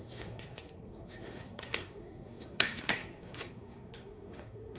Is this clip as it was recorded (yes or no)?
no